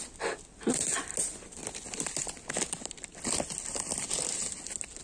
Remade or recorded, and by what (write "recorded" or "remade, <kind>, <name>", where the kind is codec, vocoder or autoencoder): recorded